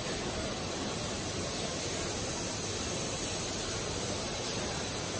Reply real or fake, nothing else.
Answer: real